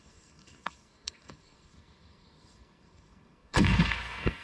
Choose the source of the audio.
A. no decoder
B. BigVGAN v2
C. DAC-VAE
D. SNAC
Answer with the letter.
D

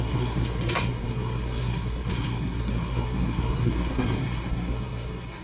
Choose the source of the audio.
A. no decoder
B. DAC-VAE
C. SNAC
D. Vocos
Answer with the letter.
C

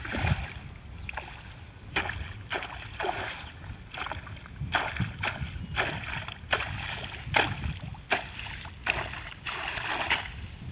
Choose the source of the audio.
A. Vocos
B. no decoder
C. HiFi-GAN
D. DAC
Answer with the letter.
B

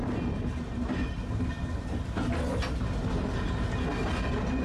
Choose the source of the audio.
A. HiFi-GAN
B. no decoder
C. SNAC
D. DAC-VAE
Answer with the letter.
B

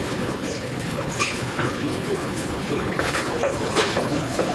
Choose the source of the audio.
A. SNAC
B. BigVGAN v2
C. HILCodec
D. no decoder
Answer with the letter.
C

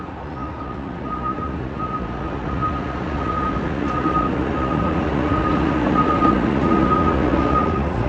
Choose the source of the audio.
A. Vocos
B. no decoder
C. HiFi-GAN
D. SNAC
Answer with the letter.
A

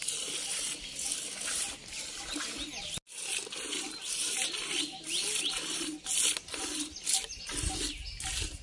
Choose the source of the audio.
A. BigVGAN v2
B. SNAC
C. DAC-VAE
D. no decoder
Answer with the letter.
D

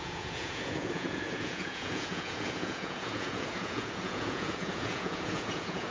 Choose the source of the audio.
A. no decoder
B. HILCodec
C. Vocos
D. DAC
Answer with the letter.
C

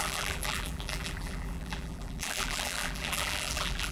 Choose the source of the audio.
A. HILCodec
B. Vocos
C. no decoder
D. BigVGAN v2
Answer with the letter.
D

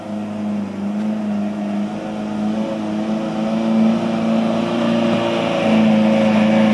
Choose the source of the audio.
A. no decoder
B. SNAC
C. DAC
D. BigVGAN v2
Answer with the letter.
A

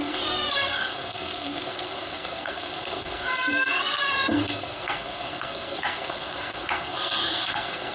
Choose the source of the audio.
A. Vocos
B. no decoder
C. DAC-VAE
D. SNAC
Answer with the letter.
D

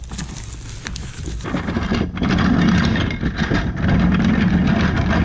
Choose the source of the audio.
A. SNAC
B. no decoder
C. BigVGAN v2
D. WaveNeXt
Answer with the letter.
B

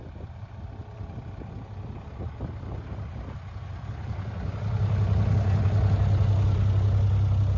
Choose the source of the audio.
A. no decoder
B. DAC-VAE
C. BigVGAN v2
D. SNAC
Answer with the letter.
A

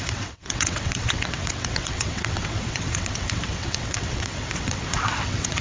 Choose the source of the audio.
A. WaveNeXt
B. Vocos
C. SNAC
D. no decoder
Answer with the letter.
A